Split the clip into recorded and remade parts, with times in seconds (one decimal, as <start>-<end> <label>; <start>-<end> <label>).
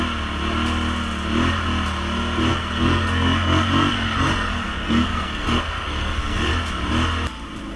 0.0-2.5 recorded; 2.5-6.5 remade; 6.5-7.8 recorded